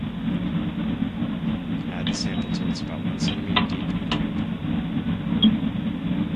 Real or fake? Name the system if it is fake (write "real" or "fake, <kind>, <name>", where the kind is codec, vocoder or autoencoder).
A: real